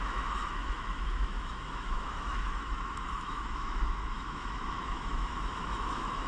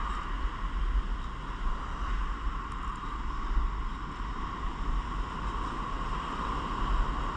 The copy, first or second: first